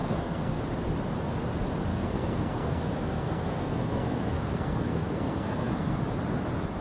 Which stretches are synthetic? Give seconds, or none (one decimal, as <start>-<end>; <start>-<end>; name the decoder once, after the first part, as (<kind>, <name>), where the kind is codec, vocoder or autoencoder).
0.0-0.6 (codec, SNAC); 1.9-6.0